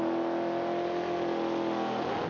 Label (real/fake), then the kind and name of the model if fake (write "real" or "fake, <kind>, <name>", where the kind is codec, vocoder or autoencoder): real